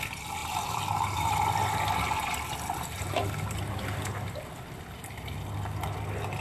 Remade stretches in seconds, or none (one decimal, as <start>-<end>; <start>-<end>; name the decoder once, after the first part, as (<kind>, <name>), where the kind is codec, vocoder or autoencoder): none